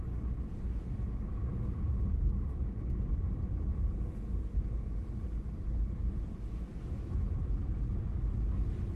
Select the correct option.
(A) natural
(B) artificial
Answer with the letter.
A